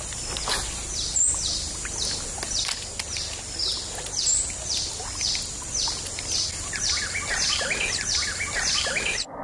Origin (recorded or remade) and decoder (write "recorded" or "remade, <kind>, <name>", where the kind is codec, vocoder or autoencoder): recorded